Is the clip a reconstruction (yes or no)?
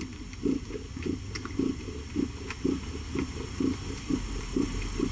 no